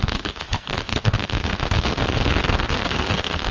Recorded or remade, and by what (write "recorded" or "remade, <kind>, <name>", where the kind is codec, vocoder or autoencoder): remade, codec, SNAC